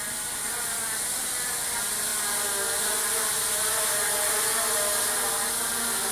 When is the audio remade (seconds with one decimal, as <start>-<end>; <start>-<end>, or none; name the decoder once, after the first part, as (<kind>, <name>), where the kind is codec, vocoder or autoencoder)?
none